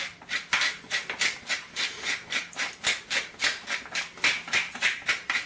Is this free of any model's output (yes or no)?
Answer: yes